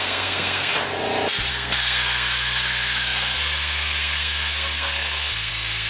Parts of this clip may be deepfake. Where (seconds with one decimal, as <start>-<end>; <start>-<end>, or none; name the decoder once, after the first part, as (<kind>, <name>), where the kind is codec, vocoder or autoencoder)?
0.0-0.7 (codec, SNAC); 1.5-5.9